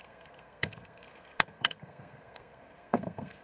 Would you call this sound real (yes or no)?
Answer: no